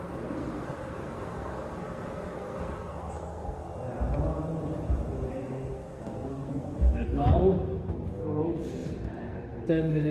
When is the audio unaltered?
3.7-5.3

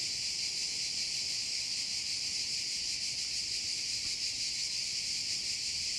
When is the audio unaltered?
0.0-6.0